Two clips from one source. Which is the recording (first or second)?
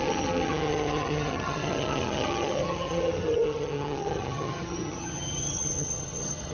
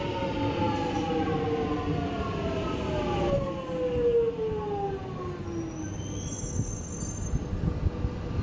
second